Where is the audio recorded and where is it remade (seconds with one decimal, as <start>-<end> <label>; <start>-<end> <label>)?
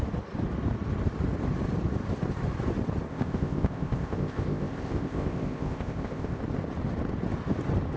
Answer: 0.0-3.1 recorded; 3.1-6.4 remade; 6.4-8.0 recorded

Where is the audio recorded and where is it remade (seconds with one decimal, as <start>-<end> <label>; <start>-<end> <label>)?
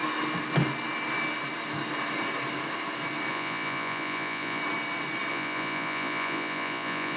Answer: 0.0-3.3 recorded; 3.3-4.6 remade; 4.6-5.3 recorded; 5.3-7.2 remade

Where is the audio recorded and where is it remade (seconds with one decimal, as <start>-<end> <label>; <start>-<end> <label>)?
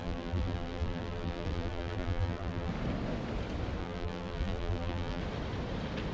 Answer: 0.0-2.7 remade; 2.7-3.8 recorded; 3.8-5.2 remade; 5.2-6.1 recorded